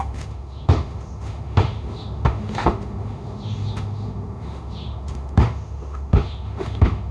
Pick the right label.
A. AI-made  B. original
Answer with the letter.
A